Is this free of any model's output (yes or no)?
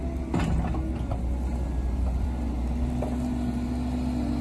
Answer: yes